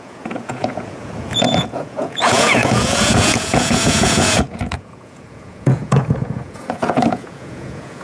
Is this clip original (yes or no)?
no